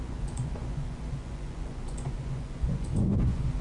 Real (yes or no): no